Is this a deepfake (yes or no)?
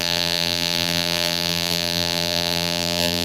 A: yes